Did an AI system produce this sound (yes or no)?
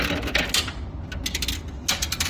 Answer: no